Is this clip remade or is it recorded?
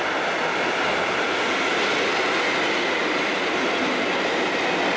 recorded